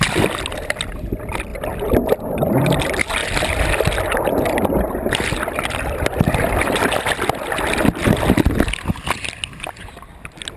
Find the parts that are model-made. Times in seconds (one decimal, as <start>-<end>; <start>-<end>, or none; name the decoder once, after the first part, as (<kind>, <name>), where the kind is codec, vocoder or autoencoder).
none